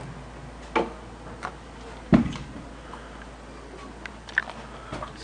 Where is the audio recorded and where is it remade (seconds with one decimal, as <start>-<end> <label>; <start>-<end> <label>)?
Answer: 0.0-5.2 recorded